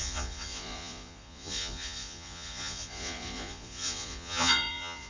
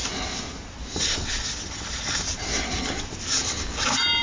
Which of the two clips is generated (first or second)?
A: first